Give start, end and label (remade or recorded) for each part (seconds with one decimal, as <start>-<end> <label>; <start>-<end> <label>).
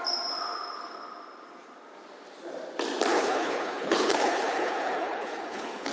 0.0-3.1 recorded; 3.1-5.9 remade